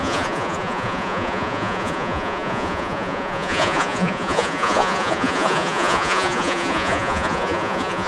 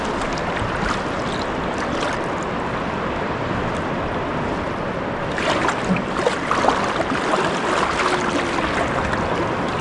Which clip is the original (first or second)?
second